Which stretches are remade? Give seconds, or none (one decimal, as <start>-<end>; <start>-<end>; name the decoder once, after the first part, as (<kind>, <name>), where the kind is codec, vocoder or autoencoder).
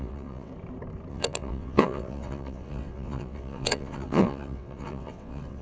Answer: 0.0-0.5 (vocoder, WaveNeXt); 1.1-5.6